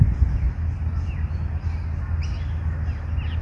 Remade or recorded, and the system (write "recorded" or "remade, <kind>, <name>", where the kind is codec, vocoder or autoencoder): recorded